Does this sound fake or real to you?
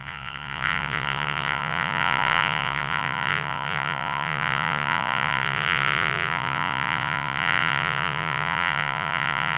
fake